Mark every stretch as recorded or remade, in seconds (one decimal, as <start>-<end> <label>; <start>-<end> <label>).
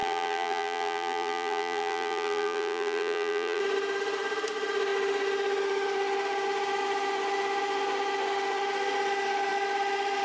0.0-3.6 remade; 3.6-10.2 recorded